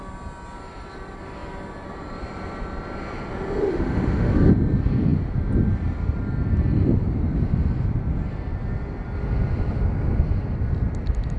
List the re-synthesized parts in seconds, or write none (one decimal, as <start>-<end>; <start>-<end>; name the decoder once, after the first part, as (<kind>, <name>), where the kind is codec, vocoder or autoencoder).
3.6-4.5 (autoencoder, DAC-VAE)